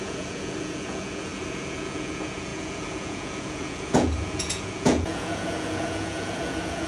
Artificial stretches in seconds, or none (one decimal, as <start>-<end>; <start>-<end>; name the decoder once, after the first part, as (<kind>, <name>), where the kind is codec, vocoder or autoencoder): 0.0-6.9 (vocoder, Vocos)